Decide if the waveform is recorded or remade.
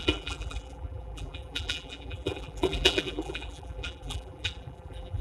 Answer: remade